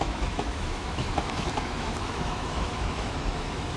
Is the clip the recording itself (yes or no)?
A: no